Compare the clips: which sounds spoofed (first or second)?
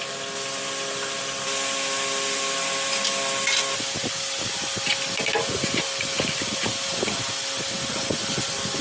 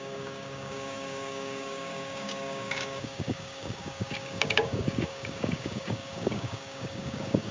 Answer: second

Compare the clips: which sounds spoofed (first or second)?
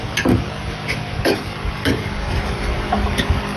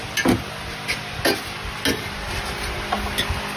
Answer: first